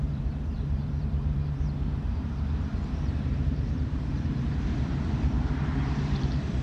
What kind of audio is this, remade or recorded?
remade